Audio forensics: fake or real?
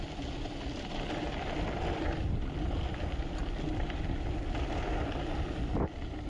real